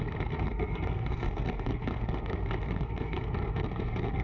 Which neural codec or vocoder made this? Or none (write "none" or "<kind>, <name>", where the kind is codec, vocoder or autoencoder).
codec, SNAC